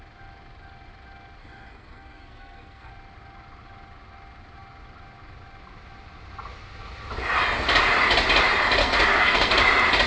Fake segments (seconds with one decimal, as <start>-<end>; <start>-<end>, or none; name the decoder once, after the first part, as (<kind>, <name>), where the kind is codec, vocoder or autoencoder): 1.4-2.9 (codec, SNAC); 8.8-9.5